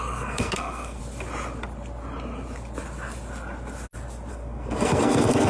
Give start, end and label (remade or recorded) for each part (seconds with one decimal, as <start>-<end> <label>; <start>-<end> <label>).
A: 0.0-1.0 remade; 1.0-4.3 recorded; 4.3-5.5 remade